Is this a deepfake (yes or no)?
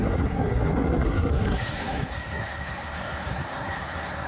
yes